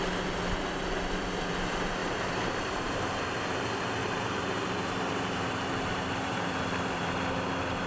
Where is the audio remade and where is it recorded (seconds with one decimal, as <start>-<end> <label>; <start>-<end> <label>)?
0.0-2.0 recorded; 2.0-3.6 remade; 3.6-4.0 recorded; 4.0-6.7 remade; 6.7-7.9 recorded